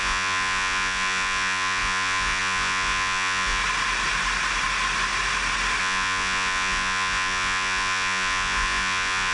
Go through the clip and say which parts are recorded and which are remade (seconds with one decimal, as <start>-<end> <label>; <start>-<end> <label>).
0.0-3.6 remade; 3.6-5.8 recorded; 5.8-9.3 remade